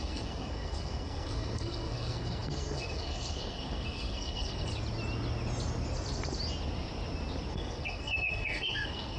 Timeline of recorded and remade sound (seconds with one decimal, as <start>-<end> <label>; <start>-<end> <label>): 0.0-4.7 remade; 4.7-7.5 recorded; 7.5-9.2 remade